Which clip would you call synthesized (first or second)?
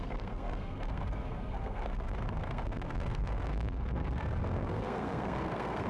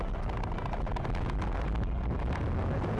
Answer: first